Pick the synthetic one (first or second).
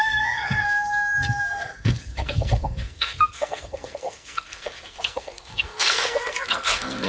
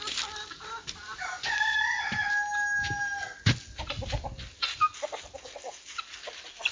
first